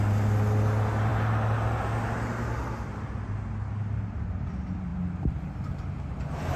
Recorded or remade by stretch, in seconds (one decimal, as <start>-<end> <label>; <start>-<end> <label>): 0.0-6.6 recorded

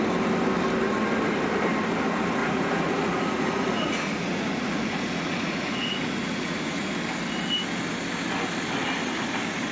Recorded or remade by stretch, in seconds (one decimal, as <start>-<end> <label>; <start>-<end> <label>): 0.0-2.4 recorded; 2.4-6.9 remade; 6.9-9.7 recorded

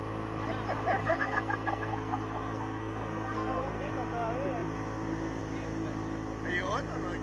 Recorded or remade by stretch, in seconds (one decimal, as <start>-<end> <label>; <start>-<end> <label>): 0.0-1.0 recorded; 1.0-3.9 remade; 3.9-7.2 recorded

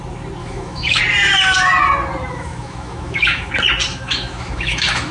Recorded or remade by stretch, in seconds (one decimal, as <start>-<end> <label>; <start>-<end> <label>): 0.0-0.4 recorded; 0.4-1.0 remade; 1.0-2.3 recorded; 2.3-3.5 remade; 3.5-3.9 recorded; 3.9-5.1 remade

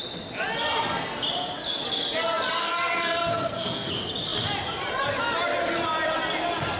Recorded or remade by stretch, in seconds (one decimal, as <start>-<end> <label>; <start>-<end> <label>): 0.0-2.6 recorded; 2.6-3.9 remade; 3.9-6.8 recorded